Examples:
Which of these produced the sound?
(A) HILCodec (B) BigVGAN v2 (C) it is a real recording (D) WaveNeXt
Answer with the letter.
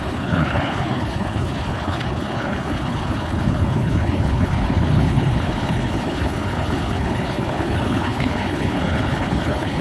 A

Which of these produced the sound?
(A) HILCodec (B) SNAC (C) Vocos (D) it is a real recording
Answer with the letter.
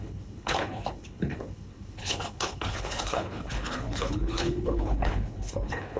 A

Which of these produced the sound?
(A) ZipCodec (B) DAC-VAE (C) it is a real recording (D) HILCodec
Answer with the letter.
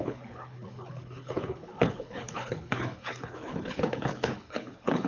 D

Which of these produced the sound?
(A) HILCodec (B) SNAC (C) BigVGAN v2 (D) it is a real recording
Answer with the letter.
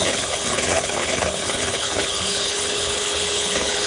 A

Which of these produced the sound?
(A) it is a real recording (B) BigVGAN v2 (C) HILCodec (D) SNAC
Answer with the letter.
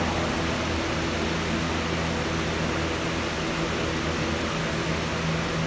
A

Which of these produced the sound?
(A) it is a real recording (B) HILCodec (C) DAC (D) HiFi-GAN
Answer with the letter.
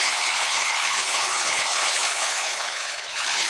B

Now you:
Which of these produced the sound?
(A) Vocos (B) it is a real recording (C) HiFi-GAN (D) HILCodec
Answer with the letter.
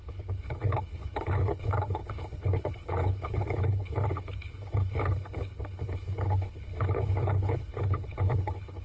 D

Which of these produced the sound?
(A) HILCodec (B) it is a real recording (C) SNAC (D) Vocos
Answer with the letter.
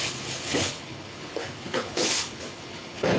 A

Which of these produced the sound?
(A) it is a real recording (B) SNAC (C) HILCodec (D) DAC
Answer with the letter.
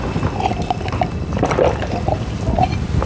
A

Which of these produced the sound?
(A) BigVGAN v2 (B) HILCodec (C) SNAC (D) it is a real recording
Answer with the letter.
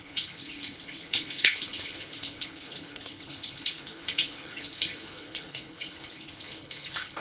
B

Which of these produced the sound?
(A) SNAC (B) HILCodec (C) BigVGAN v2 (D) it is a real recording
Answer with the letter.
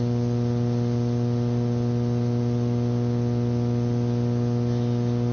D